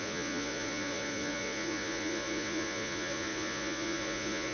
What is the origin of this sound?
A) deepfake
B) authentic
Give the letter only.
A